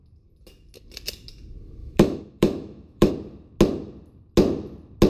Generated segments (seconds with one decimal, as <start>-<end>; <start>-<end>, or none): 1.8-3.1